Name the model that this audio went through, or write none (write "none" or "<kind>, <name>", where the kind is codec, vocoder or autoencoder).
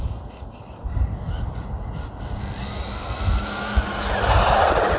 none